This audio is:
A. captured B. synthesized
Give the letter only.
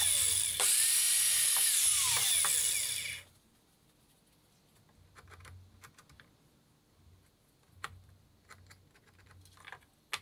A